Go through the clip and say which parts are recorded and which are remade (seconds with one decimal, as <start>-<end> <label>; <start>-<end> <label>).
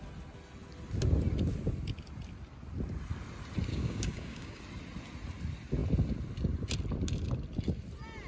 0.0-3.7 recorded; 3.7-4.6 remade; 4.6-8.3 recorded